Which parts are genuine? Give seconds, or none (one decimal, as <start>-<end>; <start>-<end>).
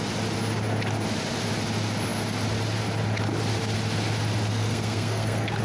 0.0-4.5